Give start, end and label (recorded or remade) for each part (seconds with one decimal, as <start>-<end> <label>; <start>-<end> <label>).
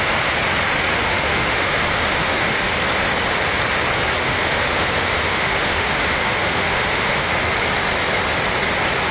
0.0-0.9 recorded; 0.9-1.8 remade; 1.8-2.2 recorded; 2.2-2.7 remade; 2.7-4.2 recorded; 4.2-7.3 remade; 7.3-9.1 recorded